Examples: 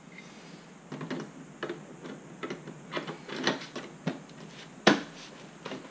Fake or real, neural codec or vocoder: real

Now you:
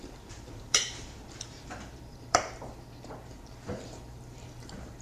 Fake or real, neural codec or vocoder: fake, vocoder, BigVGAN v2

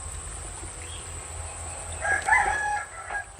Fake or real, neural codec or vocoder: real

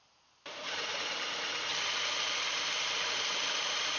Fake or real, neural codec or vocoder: real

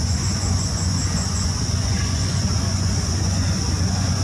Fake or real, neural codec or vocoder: fake, vocoder, Vocos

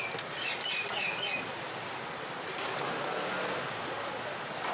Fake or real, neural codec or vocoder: real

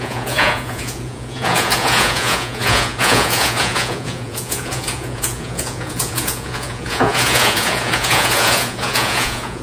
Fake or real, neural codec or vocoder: fake, vocoder, Vocos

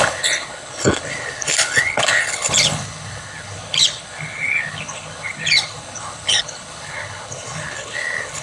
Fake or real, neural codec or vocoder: fake, codec, HILCodec